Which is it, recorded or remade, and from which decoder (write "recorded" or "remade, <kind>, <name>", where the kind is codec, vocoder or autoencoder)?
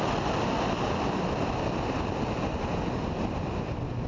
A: recorded